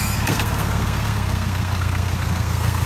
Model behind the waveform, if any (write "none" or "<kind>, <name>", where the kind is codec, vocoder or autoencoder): codec, SNAC